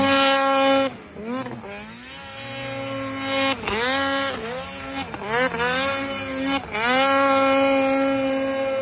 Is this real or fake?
real